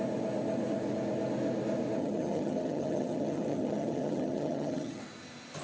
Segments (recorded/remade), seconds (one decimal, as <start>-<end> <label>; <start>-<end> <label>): 0.0-2.0 recorded; 2.0-5.0 remade; 5.0-5.6 recorded